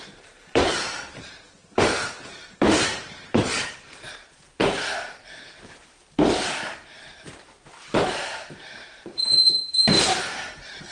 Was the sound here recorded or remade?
remade